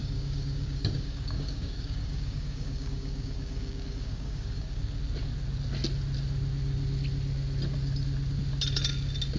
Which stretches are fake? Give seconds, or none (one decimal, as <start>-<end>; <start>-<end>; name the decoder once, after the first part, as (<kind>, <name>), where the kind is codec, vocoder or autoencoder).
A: 0.0-4.8 (codec, DAC)